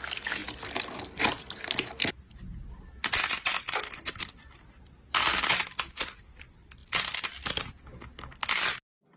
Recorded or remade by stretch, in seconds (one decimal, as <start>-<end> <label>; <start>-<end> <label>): 0.0-9.2 recorded

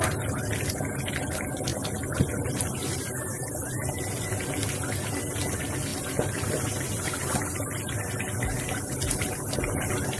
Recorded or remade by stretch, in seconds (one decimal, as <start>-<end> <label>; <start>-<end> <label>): 0.0-1.7 recorded; 1.7-4.9 remade; 4.9-5.9 recorded; 5.9-9.3 remade; 9.3-10.2 recorded

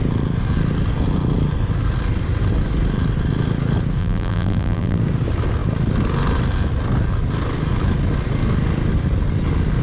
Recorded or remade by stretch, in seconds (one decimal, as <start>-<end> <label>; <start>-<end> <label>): 0.0-4.0 recorded; 4.0-5.0 remade; 5.0-9.8 recorded

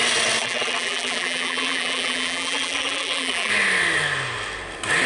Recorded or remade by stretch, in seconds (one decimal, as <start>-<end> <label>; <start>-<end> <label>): 0.0-0.4 recorded; 0.4-3.5 remade; 3.5-5.1 recorded

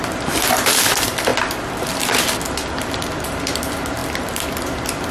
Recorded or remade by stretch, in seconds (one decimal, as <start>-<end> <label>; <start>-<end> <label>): 0.0-5.1 remade

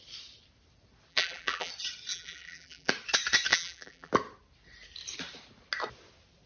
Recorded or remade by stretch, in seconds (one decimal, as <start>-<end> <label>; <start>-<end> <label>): 0.0-1.1 recorded; 1.1-1.7 remade; 1.7-2.1 recorded; 2.1-2.9 remade; 2.9-3.5 recorded; 3.5-4.1 remade; 4.1-6.5 recorded